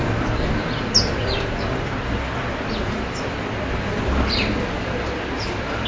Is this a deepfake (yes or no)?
no